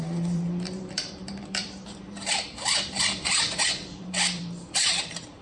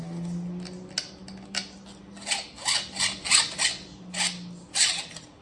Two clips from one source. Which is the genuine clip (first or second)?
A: second